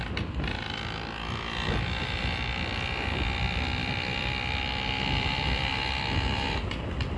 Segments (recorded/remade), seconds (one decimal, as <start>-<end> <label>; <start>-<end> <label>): 0.0-3.8 recorded; 3.8-4.6 remade; 4.6-7.2 recorded